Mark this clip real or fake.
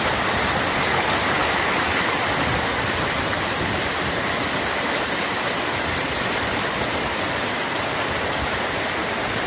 real